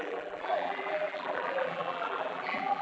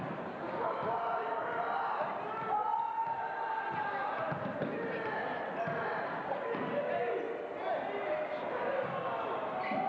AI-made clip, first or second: first